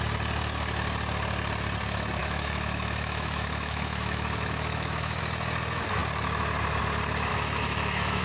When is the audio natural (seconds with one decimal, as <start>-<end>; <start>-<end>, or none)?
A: 0.0-2.2; 5.2-7.3